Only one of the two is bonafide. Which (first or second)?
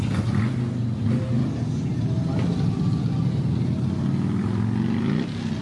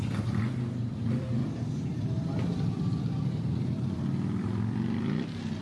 first